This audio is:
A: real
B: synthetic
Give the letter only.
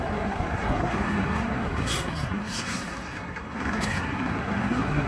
B